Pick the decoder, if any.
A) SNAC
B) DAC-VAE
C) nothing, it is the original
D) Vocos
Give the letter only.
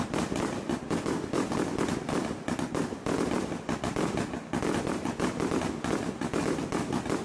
C